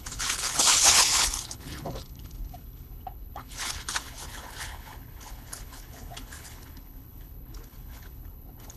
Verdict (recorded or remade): remade